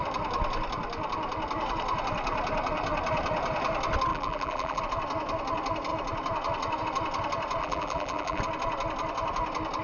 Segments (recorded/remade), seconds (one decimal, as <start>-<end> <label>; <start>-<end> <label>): 0.0-4.1 recorded; 4.1-4.8 remade; 4.8-7.6 recorded; 7.6-8.4 remade; 8.4-9.8 recorded

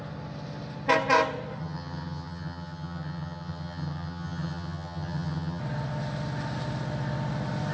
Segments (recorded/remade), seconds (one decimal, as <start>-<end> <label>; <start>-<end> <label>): 0.0-1.6 recorded; 1.6-5.6 remade; 5.6-7.7 recorded

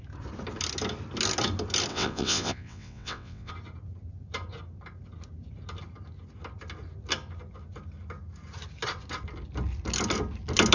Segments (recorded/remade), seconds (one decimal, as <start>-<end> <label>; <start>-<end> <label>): 0.0-1.9 recorded; 1.9-3.5 remade; 3.5-10.7 recorded

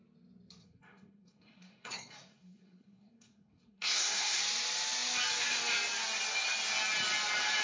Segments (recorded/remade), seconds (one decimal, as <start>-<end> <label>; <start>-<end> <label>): 0.0-0.6 recorded; 0.6-4.4 remade; 4.4-7.6 recorded